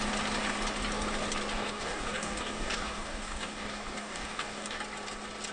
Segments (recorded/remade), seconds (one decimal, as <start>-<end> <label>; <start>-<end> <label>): 0.0-1.5 recorded; 1.5-4.8 remade; 4.8-5.5 recorded